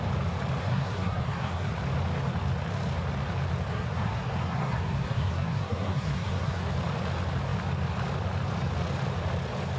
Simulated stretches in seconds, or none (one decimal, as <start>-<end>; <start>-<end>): 0.6-1.7; 3.7-6.7